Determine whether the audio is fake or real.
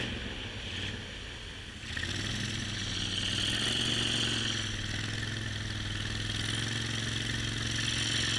real